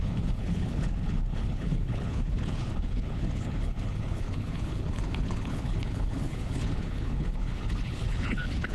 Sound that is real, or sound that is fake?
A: fake